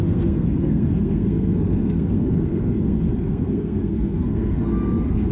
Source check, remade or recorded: remade